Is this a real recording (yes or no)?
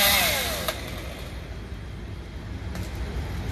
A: yes